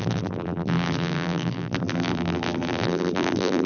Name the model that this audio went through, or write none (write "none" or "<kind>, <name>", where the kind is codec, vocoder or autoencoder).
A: vocoder, BigVGAN v2